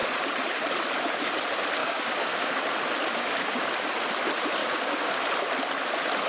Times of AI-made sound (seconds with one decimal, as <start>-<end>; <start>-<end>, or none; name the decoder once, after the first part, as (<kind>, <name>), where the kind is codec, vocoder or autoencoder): 1.8-2.5 (codec, DAC); 3.1-3.9; 4.6-5.1